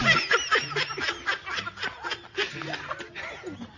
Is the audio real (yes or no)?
yes